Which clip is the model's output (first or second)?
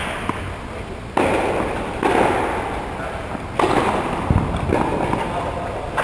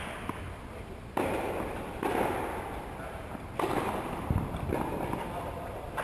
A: second